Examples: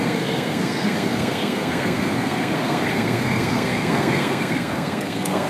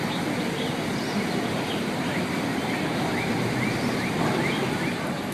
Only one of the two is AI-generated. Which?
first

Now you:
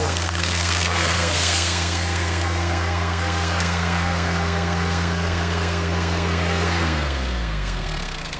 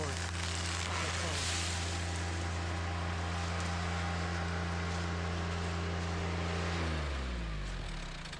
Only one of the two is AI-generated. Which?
first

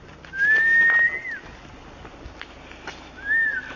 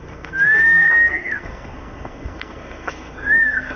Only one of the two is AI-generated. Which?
second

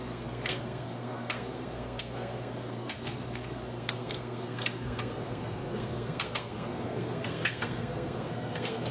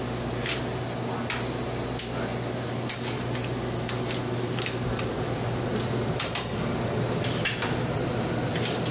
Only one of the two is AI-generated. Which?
first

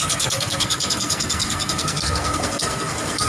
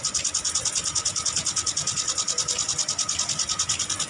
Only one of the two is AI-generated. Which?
first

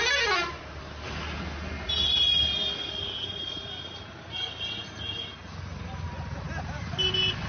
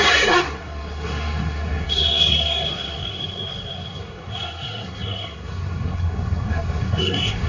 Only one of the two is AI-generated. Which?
second